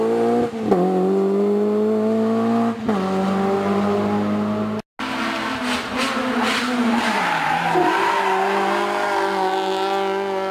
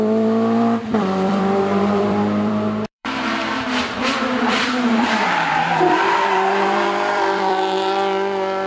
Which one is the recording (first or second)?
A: first